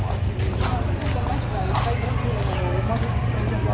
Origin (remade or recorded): recorded